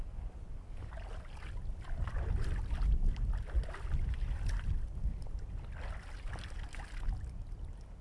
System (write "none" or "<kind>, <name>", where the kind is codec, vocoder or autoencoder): none